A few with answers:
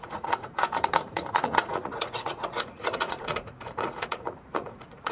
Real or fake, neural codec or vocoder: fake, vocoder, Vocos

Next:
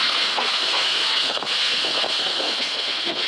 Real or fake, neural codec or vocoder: fake, codec, SNAC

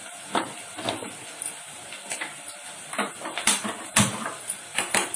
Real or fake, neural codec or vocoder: fake, vocoder, BigVGAN v2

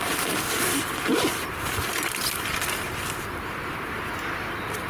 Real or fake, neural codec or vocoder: real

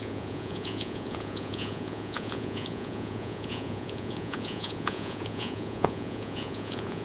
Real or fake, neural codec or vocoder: fake, vocoder, Vocos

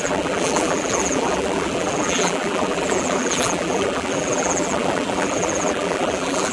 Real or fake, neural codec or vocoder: fake, vocoder, BigVGAN v2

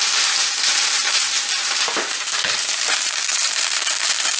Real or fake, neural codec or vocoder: fake, vocoder, BigVGAN v2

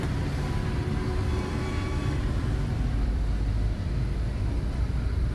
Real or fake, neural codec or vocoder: fake, vocoder, BigVGAN v2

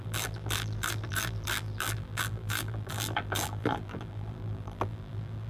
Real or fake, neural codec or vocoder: fake, vocoder, BigVGAN v2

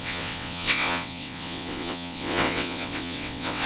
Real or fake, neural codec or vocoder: fake, vocoder, WaveNeXt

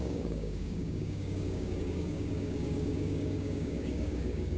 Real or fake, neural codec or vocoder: fake, codec, DAC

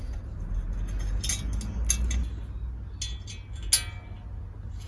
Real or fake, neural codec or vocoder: real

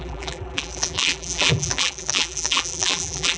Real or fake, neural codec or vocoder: fake, vocoder, BigVGAN v2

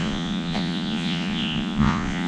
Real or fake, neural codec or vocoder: fake, vocoder, Vocos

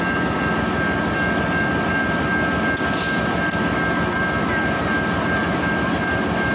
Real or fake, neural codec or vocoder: real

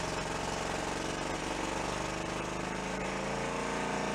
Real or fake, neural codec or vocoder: real